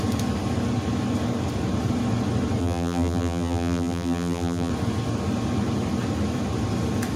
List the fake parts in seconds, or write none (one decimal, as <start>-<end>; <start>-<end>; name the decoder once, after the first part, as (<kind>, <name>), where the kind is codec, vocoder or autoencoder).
2.6-4.7 (vocoder, BigVGAN v2)